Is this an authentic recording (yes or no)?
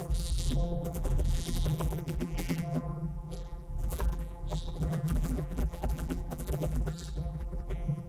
no